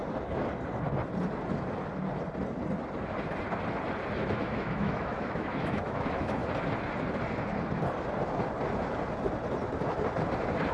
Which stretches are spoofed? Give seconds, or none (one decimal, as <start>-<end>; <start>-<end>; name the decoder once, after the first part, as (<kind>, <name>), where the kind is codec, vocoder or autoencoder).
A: 4.4-6.4 (autoencoder, DAC-VAE)